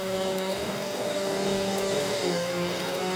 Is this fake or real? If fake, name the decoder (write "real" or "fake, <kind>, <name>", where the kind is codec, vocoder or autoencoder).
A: fake, codec, DAC